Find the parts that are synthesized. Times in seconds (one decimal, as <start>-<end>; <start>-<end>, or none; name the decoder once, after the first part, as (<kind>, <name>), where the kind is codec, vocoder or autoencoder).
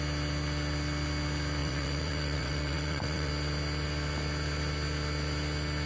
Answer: 1.6-3.3 (vocoder, Vocos)